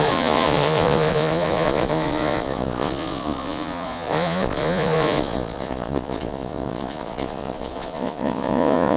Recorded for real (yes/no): no